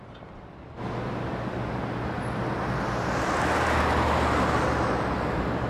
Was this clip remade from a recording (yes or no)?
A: no